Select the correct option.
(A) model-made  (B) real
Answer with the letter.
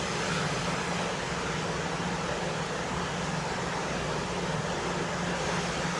B